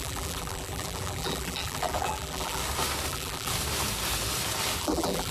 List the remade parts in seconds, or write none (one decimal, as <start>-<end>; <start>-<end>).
0.0-2.6; 3.1-3.5; 4.8-5.3